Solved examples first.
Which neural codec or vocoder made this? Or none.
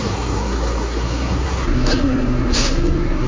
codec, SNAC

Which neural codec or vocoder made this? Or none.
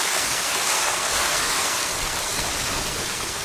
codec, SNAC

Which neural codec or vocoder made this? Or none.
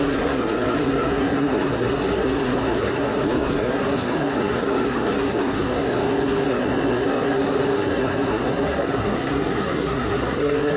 codec, SNAC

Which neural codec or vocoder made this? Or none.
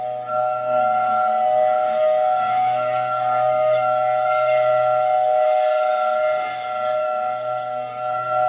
codec, SNAC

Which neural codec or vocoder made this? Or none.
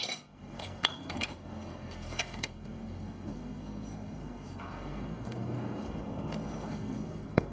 codec, SNAC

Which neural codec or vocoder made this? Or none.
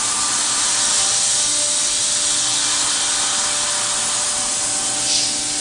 none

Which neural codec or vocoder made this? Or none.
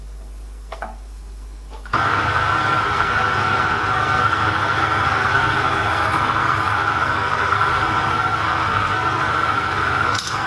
codec, SNAC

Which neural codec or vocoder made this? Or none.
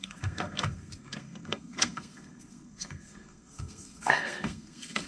codec, SNAC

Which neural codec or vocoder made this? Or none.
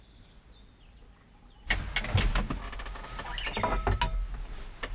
none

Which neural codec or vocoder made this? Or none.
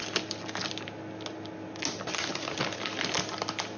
none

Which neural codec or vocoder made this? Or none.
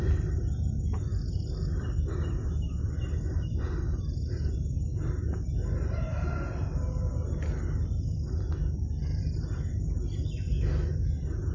none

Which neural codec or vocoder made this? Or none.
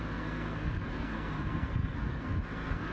codec, SNAC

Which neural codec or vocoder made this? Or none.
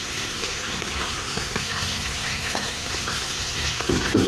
codec, SNAC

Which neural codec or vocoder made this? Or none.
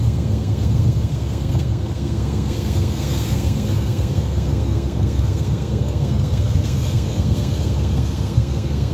codec, SNAC